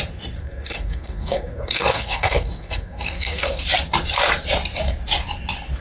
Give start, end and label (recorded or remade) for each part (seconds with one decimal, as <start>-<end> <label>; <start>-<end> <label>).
0.0-0.4 recorded; 0.4-3.6 remade; 3.6-5.8 recorded